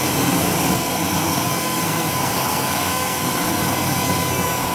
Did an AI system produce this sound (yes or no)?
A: yes